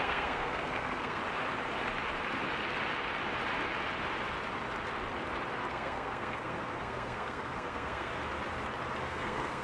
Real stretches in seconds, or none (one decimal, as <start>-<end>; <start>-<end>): 1.2-5.7; 8.1-9.0